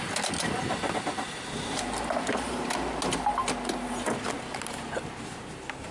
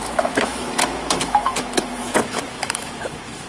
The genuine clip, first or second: first